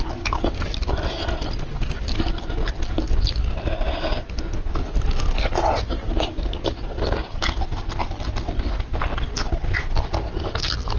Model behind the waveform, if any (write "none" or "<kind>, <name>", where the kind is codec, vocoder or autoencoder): none